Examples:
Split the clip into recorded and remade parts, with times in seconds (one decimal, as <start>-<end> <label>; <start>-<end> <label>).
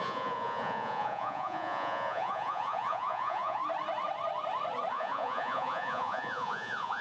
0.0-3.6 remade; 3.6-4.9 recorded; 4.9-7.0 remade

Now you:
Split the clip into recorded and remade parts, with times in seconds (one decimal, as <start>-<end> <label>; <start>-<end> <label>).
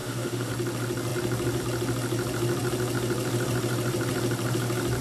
0.0-0.5 remade; 0.5-5.0 recorded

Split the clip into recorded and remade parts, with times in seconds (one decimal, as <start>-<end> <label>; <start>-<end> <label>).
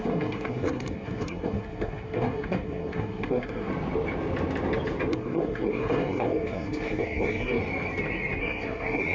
0.0-3.7 remade; 3.7-5.1 recorded; 5.1-7.6 remade; 7.6-8.4 recorded; 8.4-9.1 remade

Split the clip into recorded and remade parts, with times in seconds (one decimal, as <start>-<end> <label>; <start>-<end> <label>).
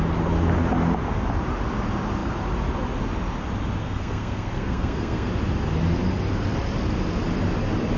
0.0-3.8 recorded; 3.8-5.3 remade; 5.3-8.0 recorded